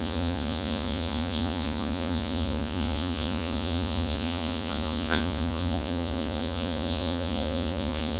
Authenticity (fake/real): fake